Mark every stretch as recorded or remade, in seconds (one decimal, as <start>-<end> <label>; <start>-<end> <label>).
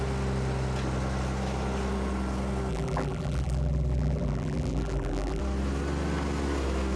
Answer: 0.0-2.7 recorded; 2.7-5.4 remade; 5.4-7.0 recorded